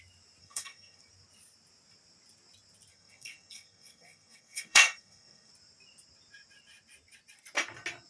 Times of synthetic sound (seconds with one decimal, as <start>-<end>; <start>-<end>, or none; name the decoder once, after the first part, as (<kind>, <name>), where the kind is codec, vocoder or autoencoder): 0.4-1.0 (codec, SNAC); 2.9-5.5